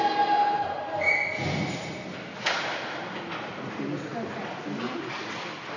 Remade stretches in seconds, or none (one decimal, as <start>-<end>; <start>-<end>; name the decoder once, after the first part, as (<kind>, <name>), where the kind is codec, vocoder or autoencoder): none

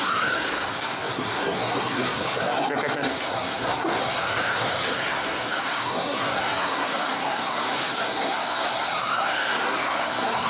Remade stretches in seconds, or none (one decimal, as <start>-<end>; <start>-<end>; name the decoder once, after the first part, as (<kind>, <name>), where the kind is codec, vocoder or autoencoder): 0.0-10.5 (codec, SNAC)